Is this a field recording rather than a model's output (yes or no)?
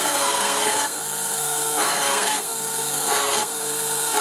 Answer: no